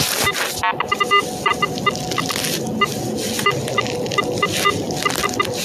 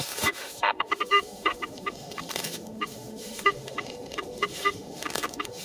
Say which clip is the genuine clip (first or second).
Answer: first